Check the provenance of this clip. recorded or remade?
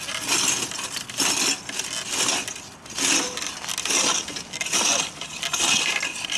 recorded